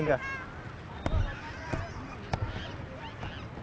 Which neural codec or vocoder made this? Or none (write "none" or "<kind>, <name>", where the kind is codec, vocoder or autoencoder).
none